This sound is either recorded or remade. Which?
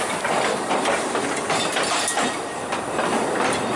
recorded